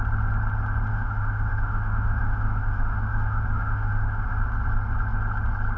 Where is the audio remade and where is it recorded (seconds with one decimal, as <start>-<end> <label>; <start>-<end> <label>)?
0.0-0.9 recorded; 0.9-4.4 remade; 4.4-5.8 recorded